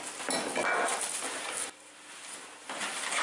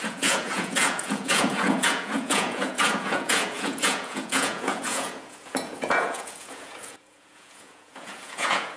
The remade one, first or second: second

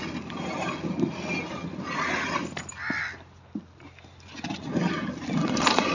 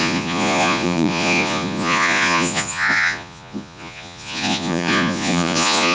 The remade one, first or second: second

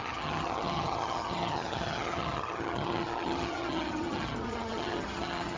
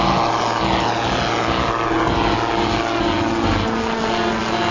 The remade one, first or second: first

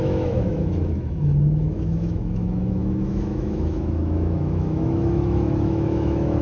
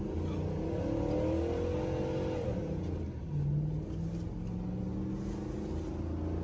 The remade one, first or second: first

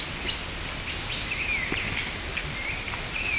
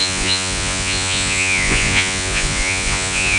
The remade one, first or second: second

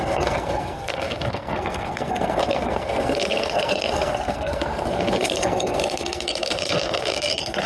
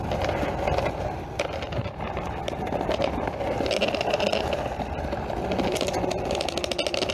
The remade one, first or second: first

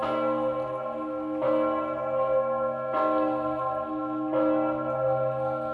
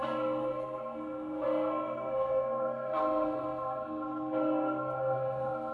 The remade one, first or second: second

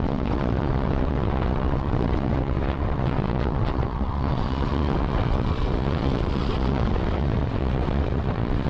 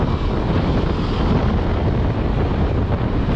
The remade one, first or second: first